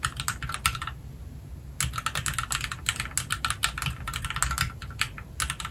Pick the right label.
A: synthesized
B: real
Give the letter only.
B